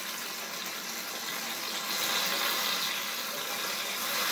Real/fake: real